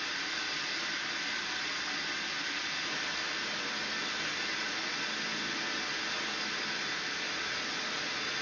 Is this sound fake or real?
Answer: real